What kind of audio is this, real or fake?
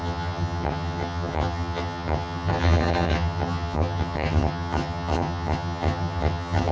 fake